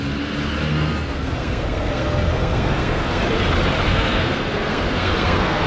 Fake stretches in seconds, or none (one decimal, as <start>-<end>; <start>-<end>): 0.7-3.2; 3.9-5.7